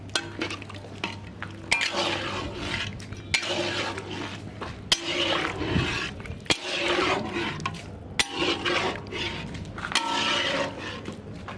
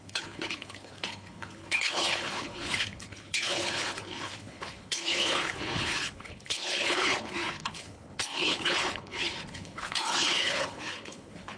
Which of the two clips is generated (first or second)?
second